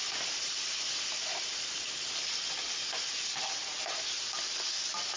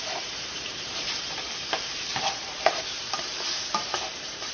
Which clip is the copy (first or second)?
second